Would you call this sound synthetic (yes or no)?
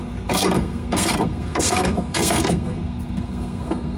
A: yes